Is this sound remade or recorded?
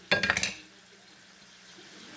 recorded